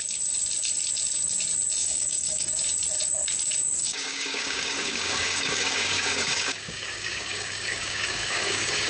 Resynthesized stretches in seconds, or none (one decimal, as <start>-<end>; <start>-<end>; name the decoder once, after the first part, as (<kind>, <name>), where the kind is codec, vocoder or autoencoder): 1.8-2.5 (codec, DAC); 3.8-8.9